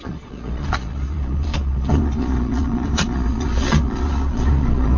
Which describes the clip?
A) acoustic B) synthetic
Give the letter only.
B